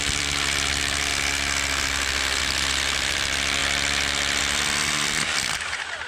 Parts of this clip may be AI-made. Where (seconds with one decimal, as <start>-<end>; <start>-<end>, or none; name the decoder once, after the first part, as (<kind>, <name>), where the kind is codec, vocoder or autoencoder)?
0.0-1.1 (vocoder, BigVGAN v2); 2.4-6.1

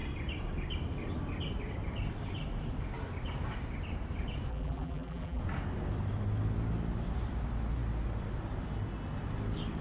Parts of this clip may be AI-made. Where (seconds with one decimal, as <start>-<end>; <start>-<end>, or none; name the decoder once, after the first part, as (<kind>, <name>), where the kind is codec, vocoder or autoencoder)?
4.5-5.4 (vocoder, BigVGAN v2)

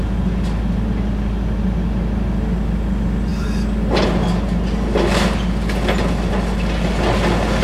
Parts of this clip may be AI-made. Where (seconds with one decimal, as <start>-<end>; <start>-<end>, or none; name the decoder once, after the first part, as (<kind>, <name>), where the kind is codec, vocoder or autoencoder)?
none

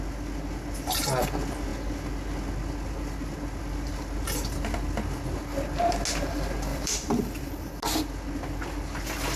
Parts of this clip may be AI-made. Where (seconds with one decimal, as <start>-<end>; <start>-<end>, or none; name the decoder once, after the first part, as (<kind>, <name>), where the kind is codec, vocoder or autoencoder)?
6.7-7.5 (vocoder, BigVGAN v2)

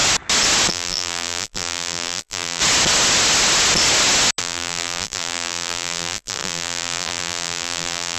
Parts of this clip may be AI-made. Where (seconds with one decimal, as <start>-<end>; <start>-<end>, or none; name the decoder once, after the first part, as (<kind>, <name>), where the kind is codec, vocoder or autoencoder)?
0.7-2.6 (vocoder, BigVGAN v2); 4.4-8.2

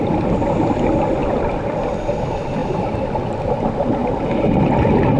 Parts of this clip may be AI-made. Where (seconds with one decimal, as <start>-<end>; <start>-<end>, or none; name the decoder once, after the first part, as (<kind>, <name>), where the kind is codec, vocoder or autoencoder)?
2.6-3.6 (vocoder, BigVGAN v2); 4.0-4.7

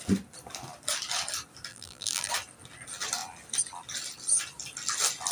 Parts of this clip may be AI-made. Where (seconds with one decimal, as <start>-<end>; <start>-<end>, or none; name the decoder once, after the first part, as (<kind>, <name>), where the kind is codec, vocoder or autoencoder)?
1.7-2.3 (vocoder, BigVGAN v2)